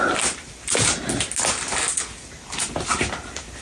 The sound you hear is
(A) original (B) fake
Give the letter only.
A